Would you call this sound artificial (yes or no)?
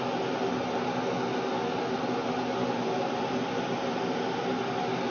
no